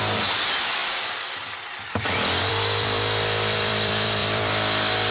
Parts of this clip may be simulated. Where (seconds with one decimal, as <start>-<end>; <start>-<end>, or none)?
0.0-5.1